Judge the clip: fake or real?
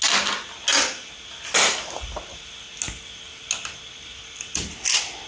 real